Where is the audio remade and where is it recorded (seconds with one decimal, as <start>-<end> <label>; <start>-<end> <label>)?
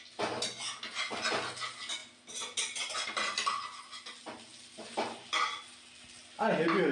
0.0-6.9 recorded